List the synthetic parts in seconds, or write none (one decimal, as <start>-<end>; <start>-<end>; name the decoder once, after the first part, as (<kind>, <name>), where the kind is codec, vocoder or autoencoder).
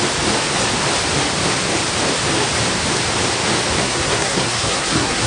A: 3.8-5.3 (codec, SNAC)